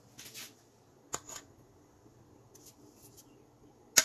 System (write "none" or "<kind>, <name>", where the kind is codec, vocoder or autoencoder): none